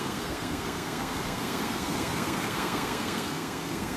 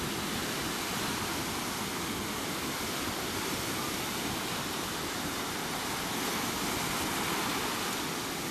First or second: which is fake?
first